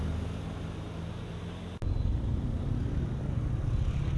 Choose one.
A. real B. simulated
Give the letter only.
A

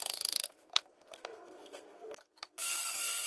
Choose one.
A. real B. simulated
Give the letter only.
B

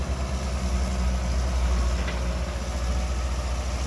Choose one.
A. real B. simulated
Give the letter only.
A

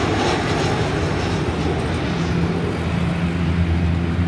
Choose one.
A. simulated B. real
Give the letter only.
B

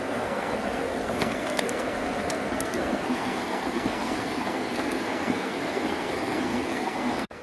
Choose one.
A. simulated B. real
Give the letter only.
A